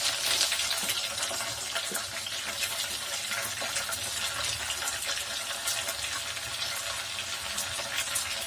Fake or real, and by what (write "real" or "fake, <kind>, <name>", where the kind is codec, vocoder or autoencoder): real